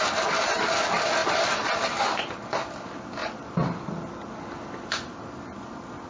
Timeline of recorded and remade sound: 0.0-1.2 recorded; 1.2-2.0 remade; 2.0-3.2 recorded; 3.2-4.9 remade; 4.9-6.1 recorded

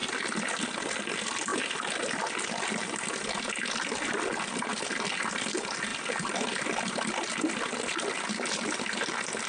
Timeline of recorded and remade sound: 0.0-0.6 remade; 0.6-5.9 recorded; 5.9-6.8 remade; 6.8-9.5 recorded

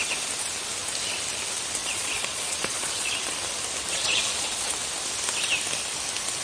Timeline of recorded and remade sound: 0.0-1.8 recorded; 1.8-3.1 remade; 3.1-3.9 recorded; 3.9-4.7 remade; 4.7-6.4 recorded